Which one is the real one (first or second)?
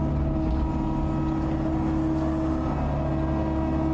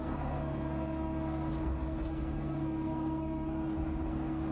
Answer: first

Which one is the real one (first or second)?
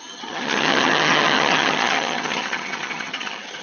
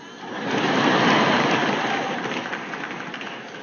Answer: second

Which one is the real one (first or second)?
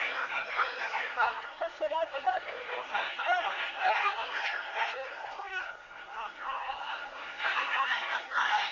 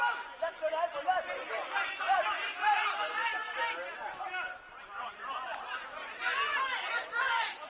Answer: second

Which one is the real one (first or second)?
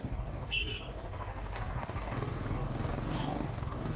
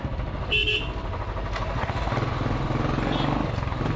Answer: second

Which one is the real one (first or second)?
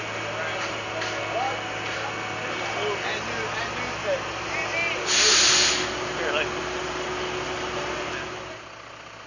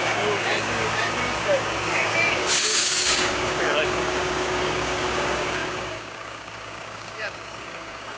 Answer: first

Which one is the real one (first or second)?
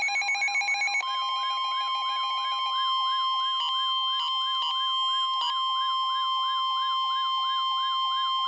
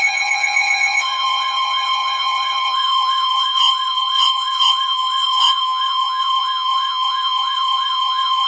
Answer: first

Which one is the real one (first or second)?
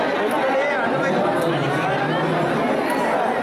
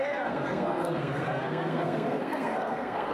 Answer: first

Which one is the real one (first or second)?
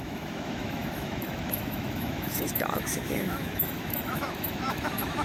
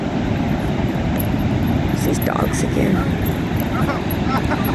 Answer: second